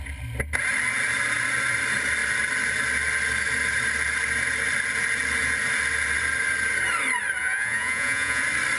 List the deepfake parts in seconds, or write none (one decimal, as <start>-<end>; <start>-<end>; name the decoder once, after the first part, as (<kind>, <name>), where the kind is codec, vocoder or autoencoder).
7.4-8.4 (vocoder, Vocos)